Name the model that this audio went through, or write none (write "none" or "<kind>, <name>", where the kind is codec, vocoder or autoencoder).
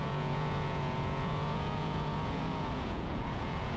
vocoder, Vocos